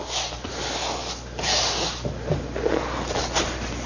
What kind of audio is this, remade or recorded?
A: recorded